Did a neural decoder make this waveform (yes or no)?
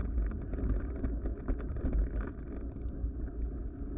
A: no